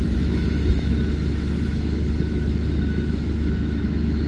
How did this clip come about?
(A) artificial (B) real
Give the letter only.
A